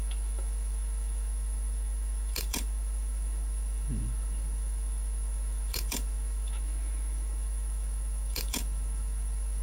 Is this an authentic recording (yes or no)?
no